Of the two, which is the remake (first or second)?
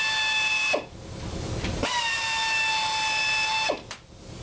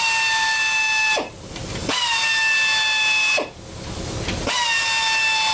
first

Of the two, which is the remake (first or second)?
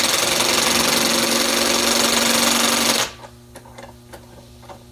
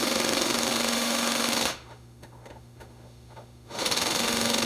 second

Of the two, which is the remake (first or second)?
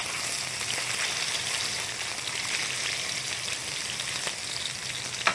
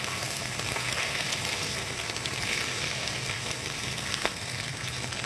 second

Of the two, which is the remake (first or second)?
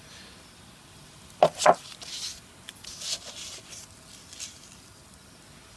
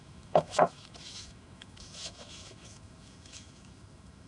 second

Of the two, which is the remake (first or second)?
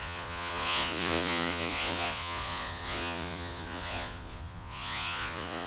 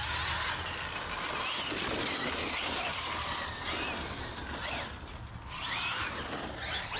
first